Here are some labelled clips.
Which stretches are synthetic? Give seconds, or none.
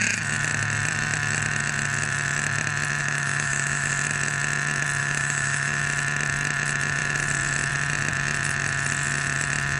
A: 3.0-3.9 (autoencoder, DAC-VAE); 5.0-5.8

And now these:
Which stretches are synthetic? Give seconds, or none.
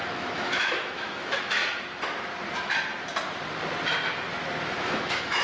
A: 0.0-1.6 (autoencoder, DAC-VAE); 4.8-5.4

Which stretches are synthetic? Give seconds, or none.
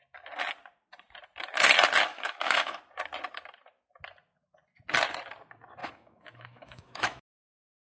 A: 2.1-2.8 (autoencoder, DAC-VAE); 5.8-7.2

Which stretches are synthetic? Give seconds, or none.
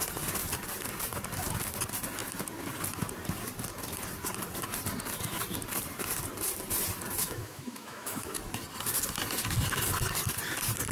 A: 7.2-8.4 (autoencoder, DAC-VAE)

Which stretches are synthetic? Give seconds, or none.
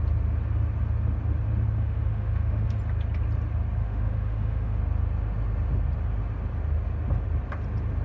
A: 1.8-2.8 (autoencoder, DAC-VAE); 3.8-4.8